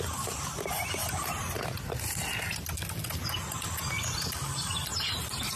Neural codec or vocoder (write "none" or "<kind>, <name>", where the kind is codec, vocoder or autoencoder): none